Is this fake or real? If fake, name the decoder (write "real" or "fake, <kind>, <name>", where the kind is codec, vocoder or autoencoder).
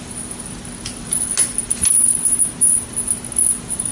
real